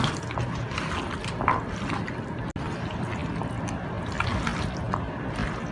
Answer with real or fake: real